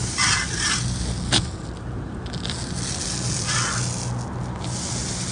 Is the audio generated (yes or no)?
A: no